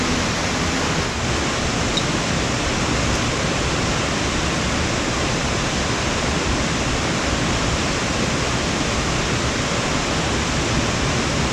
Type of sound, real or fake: real